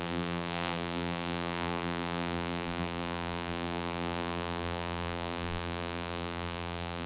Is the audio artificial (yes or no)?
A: yes